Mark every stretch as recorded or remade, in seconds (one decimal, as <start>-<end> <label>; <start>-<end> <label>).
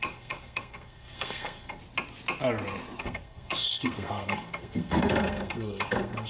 0.0-1.8 remade; 1.8-3.0 recorded; 3.0-6.3 remade